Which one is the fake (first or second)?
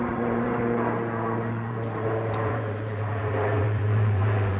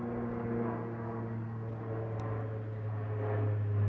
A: first